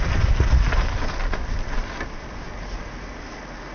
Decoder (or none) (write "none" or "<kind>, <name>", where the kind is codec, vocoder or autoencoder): none